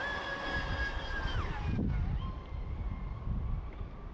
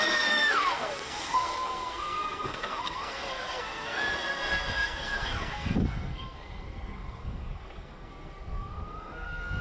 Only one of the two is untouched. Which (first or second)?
first